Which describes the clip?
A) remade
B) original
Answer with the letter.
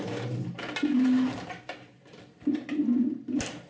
B